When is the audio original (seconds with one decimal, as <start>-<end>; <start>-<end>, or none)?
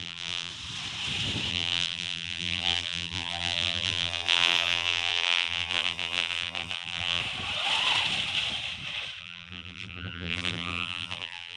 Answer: 0.5-1.5; 7.2-9.2